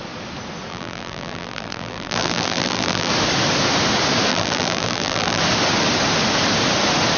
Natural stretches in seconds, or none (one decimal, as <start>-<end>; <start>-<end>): 0.0-0.7; 3.1-4.3; 5.4-7.2

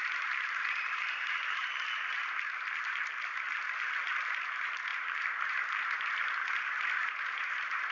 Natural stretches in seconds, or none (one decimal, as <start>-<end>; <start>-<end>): 0.0-7.9

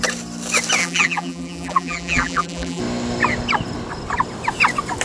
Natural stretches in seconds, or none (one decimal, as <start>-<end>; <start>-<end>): 0.0-0.8; 2.8-5.0

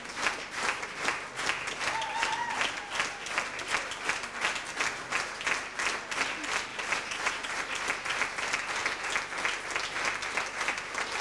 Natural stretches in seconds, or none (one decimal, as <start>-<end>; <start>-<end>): 0.0-6.7; 7.6-11.2

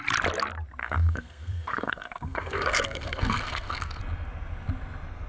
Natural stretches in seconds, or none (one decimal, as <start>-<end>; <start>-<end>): 0.0-0.8; 4.0-5.3